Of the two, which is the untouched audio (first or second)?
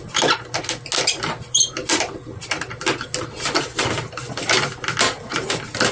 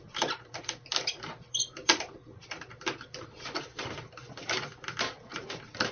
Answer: first